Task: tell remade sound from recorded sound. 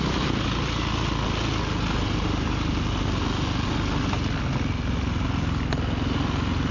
recorded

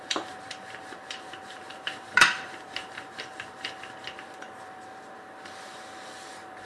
remade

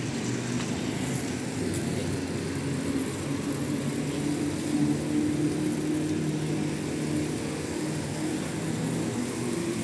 recorded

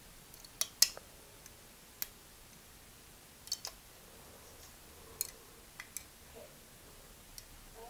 recorded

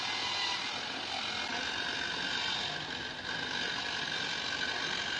recorded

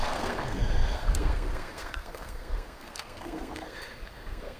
remade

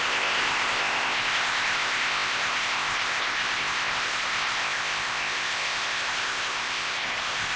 remade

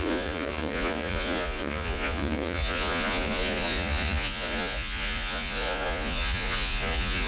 remade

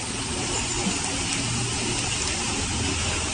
recorded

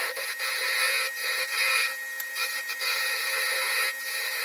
remade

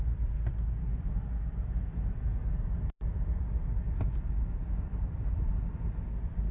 recorded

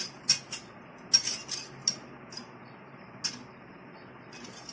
recorded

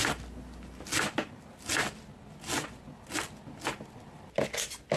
recorded